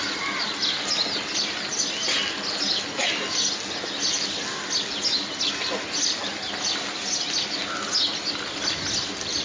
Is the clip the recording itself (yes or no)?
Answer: yes